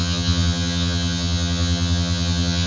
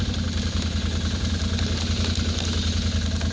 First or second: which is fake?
first